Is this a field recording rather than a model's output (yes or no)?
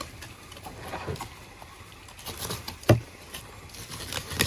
yes